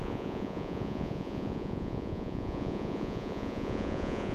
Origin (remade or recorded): remade